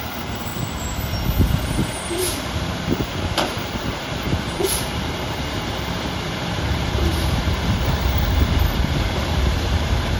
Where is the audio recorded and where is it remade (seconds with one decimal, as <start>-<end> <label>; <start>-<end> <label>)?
0.0-0.5 remade; 0.5-1.5 recorded; 1.5-10.2 remade